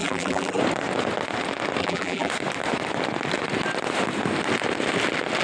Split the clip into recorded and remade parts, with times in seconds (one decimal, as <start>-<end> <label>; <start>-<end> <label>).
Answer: 0.0-0.6 remade; 0.6-1.8 recorded; 1.8-2.3 remade; 2.3-5.4 recorded